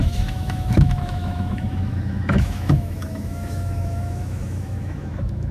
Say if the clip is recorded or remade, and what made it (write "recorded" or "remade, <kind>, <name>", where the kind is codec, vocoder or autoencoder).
remade, autoencoder, DAC-VAE